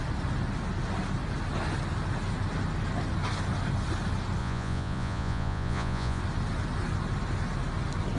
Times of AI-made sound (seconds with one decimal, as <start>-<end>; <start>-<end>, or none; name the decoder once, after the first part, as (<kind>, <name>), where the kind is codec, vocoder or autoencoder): 4.4-6.2 (vocoder, Vocos)